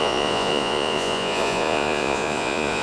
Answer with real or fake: fake